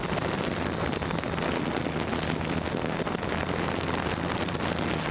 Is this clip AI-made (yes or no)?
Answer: no